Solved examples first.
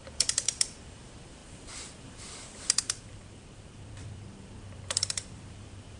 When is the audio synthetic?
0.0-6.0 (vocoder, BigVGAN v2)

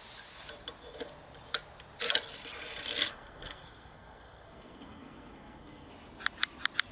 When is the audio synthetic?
3.1-5.9 (codec, SNAC)

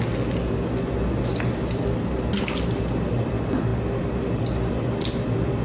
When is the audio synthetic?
none

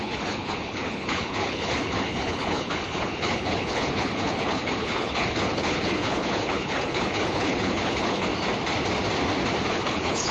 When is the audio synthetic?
0.0-8.3 (codec, HILCodec); 9.7-10.3